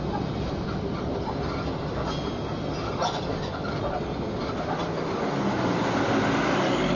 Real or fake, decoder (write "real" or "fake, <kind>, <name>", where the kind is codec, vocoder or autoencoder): real